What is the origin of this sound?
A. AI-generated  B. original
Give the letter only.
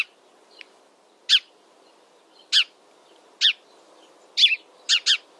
B